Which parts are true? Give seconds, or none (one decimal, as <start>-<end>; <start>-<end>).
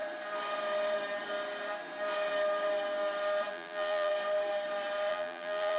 0.0-3.5; 4.1-5.1